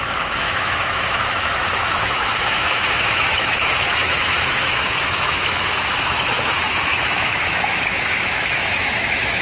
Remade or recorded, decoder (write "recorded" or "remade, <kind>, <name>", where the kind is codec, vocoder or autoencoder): remade, autoencoder, DAC-VAE